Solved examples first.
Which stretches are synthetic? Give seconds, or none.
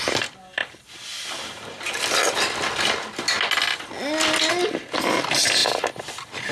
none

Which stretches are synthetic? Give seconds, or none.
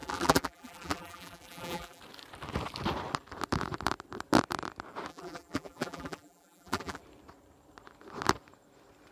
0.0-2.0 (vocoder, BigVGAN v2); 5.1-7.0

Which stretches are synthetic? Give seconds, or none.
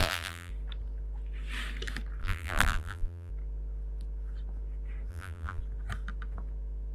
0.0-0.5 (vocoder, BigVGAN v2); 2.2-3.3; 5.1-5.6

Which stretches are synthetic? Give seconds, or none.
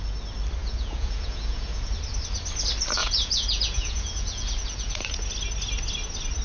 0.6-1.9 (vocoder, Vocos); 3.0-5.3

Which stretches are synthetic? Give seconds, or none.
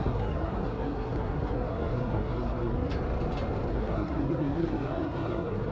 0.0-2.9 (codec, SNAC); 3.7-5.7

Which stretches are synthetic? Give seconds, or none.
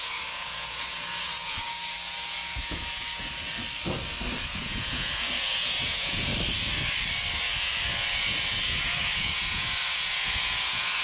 0.0-3.5 (vocoder, Vocos); 4.4-6.3; 7.4-11.0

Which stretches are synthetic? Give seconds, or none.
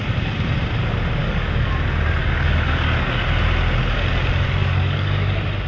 1.2-1.7 (codec, DAC); 2.2-3.2; 4.6-5.3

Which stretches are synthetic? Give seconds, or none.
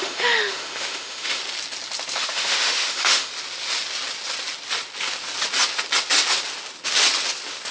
0.0-1.4 (autoencoder, DAC-VAE); 2.2-3.3